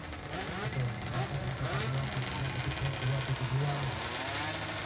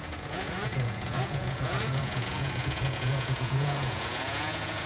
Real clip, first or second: first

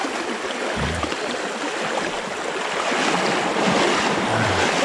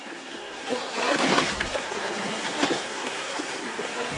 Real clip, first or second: first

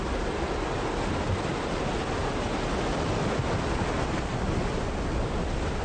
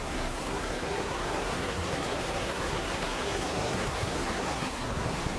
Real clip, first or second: first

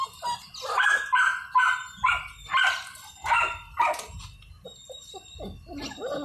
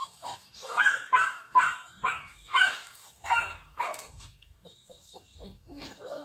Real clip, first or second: first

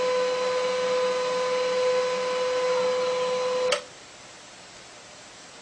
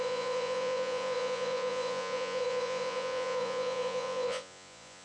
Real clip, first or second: first